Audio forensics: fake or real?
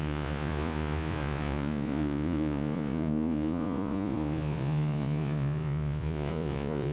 fake